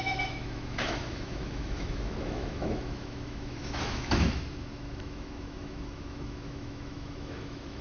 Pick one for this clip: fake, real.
fake